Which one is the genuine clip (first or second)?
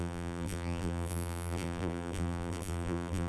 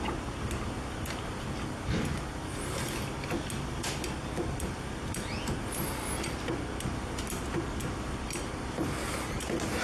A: second